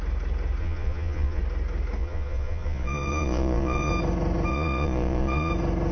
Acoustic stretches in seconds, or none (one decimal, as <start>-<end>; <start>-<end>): 0.0-0.6; 1.4-2.0; 3.9-4.5; 5.5-5.9